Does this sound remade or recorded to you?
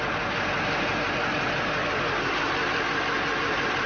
recorded